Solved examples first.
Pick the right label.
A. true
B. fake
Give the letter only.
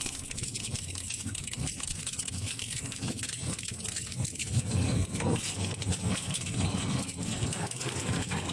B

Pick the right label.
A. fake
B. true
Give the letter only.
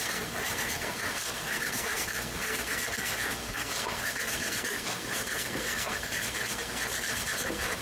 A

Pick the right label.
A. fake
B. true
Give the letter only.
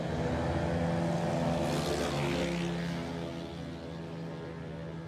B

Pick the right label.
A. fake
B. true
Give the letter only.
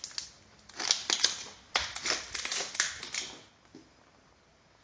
B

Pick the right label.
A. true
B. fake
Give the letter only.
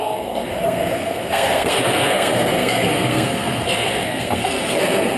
B